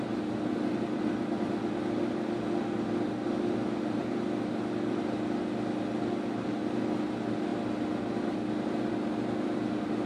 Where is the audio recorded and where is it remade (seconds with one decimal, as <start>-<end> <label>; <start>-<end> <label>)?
0.0-10.1 recorded